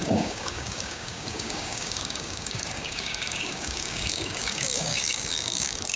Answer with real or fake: fake